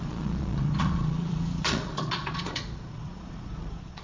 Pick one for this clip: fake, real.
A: fake